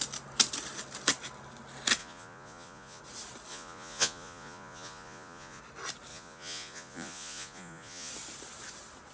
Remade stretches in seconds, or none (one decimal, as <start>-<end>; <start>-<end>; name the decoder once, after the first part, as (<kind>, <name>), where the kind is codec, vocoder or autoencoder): 2.0-3.0 (vocoder, Vocos); 3.5-5.6; 6.1-8.1